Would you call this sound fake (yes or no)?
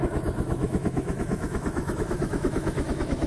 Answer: yes